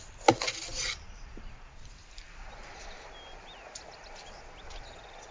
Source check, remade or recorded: recorded